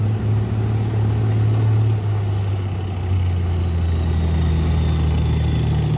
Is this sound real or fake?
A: real